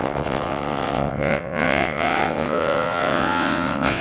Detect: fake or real fake